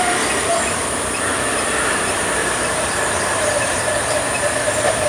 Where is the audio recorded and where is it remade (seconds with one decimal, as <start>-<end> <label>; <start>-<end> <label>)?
0.0-2.4 recorded; 2.4-3.8 remade; 3.8-5.1 recorded